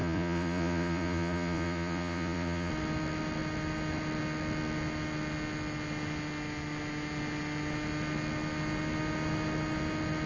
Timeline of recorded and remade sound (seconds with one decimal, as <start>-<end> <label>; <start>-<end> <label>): 0.0-2.7 remade; 2.7-10.3 recorded